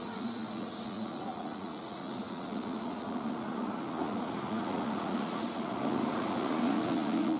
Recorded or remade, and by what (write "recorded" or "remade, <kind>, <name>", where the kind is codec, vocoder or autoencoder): remade, vocoder, Vocos